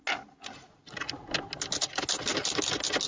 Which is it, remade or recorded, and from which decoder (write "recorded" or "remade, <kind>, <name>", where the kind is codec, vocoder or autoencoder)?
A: recorded